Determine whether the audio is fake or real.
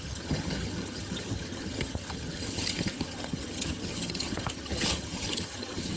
fake